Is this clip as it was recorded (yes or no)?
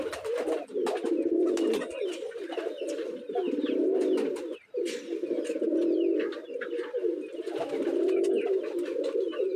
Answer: yes